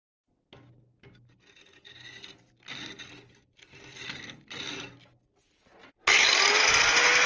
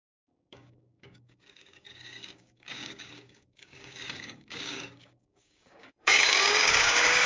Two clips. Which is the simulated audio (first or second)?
second